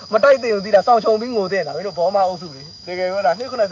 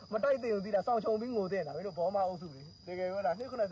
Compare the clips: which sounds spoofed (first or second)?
first